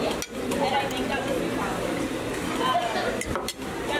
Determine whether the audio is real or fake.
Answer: real